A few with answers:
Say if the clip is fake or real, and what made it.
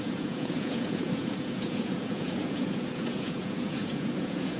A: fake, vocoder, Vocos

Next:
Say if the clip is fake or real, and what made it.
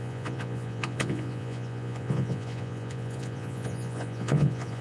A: fake, vocoder, Vocos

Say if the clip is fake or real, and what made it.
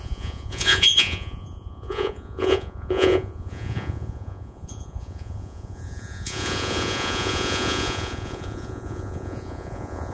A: fake, vocoder, Vocos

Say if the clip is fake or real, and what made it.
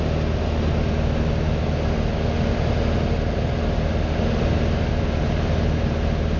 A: real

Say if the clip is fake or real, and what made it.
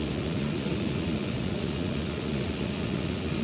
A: fake, vocoder, Vocos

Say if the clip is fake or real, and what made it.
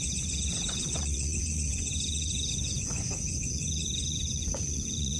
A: fake, vocoder, Vocos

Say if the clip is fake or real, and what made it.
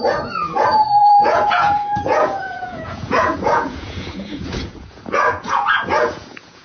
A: fake, vocoder, Vocos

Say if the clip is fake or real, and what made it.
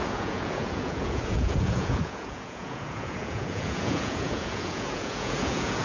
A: fake, vocoder, Vocos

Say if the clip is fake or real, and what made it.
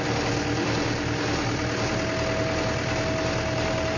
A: real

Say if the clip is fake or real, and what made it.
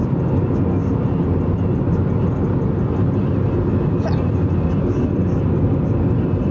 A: real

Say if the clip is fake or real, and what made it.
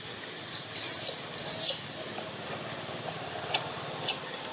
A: real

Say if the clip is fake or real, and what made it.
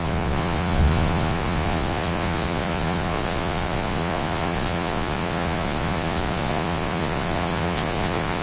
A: fake, vocoder, Vocos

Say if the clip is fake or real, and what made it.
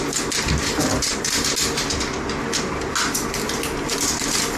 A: real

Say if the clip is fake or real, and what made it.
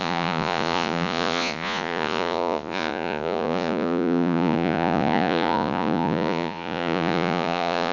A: fake, vocoder, Vocos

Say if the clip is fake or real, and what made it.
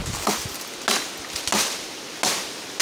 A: real